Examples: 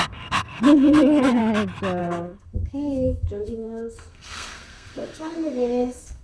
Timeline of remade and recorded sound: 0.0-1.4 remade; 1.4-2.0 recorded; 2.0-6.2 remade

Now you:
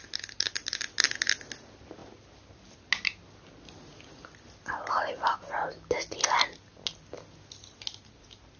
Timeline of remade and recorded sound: 0.0-8.6 recorded

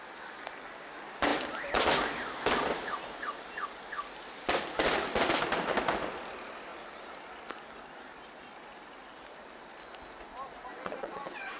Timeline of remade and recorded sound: 0.0-10.7 recorded; 10.7-11.6 remade

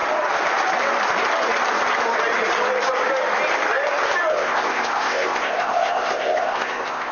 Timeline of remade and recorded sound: 0.0-4.3 recorded; 4.3-7.1 remade

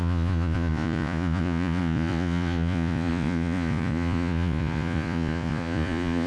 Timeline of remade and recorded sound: 0.0-6.3 remade